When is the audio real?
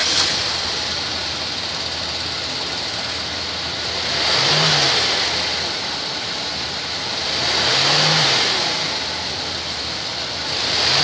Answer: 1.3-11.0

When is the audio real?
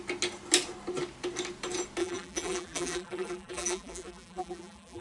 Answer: 0.0-2.0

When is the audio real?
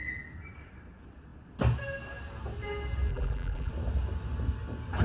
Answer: 0.0-3.1; 3.7-5.0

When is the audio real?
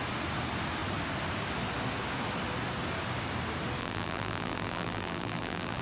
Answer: 0.0-3.8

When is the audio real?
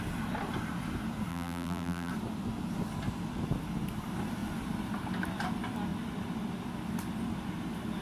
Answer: 0.0-1.3; 2.1-8.0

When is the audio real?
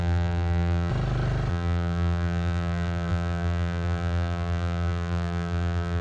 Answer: 0.9-1.5